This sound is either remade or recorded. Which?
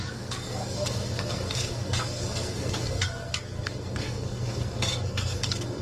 remade